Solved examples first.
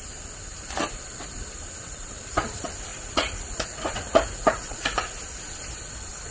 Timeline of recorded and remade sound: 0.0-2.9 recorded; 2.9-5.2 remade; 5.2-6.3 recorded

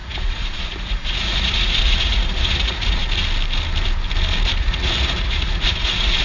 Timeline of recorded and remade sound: 0.0-3.0 remade; 3.0-4.6 recorded; 4.6-6.2 remade

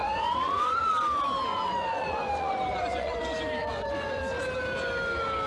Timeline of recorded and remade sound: 0.0-0.9 remade; 0.9-1.5 recorded; 1.5-3.2 remade; 3.2-3.6 recorded; 3.6-4.2 remade; 4.2-5.5 recorded

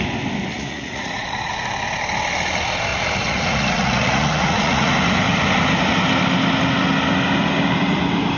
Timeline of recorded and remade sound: 0.0-0.5 recorded; 0.5-1.5 remade; 1.5-2.9 recorded; 2.9-4.9 remade; 4.9-8.4 recorded